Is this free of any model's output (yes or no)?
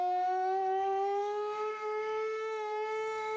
no